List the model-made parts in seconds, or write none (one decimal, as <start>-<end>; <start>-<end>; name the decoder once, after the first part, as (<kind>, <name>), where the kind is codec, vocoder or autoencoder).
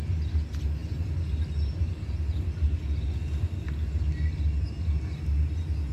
none